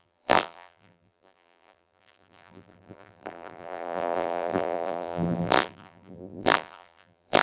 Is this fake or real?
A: fake